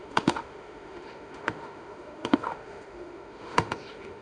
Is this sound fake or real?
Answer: fake